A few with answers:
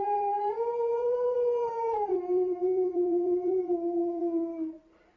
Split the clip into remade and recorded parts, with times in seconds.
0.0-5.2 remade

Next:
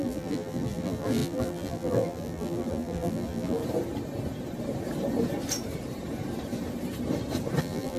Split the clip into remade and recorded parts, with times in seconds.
0.0-3.6 remade; 3.6-7.6 recorded; 7.6-8.0 remade

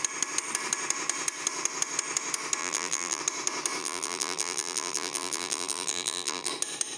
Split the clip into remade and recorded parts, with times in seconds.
0.0-2.6 recorded; 2.6-3.2 remade; 3.2-3.8 recorded; 3.8-6.5 remade; 6.5-7.0 recorded

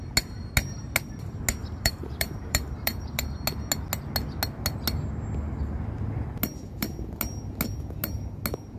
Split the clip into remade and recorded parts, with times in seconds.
0.0-1.6 recorded; 1.6-3.2 remade; 3.2-8.8 recorded

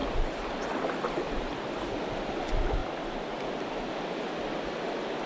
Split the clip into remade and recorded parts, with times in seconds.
0.0-1.9 recorded; 1.9-2.4 remade; 2.4-2.8 recorded; 2.8-3.9 remade; 3.9-5.3 recorded